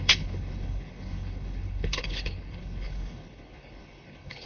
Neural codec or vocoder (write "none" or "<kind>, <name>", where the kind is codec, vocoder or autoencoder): codec, HILCodec